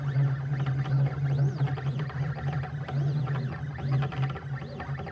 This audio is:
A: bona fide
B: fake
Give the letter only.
A